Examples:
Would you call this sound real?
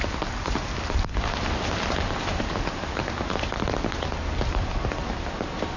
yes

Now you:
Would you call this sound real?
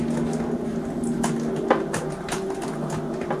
yes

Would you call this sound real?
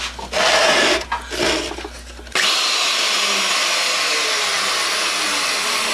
yes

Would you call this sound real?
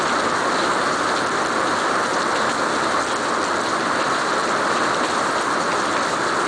yes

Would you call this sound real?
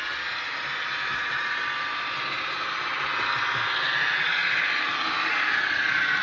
yes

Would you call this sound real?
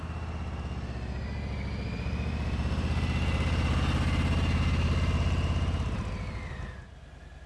yes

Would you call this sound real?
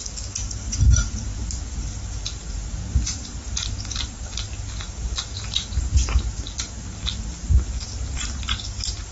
yes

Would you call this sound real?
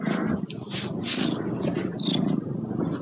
yes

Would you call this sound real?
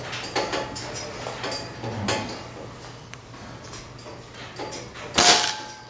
yes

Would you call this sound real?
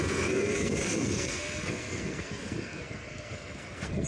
no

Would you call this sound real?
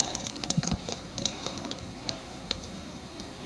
no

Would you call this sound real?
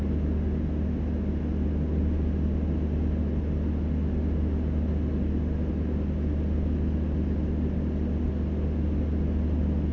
yes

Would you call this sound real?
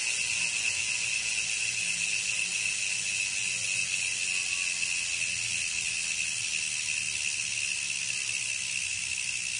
yes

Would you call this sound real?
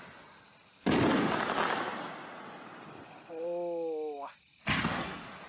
yes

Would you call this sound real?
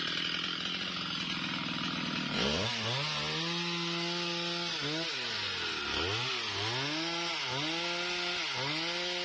yes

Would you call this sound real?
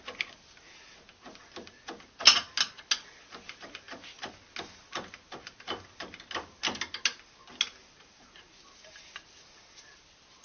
yes